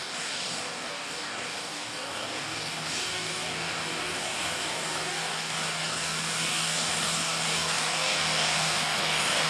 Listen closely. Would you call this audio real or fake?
fake